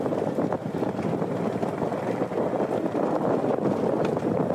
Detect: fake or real real